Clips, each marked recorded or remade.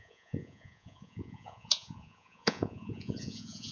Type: remade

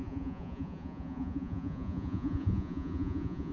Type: remade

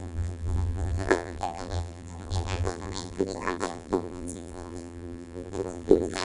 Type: remade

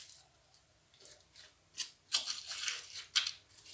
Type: recorded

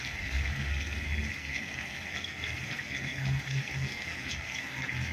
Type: remade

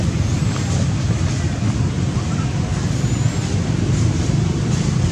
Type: recorded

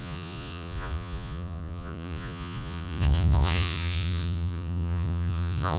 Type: remade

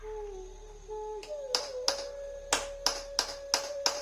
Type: recorded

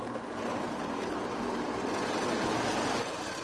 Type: recorded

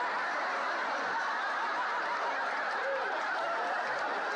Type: recorded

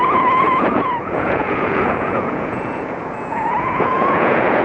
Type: remade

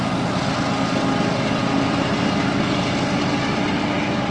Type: recorded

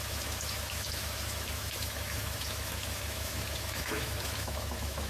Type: remade